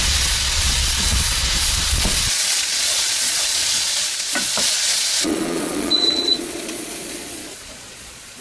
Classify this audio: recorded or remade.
remade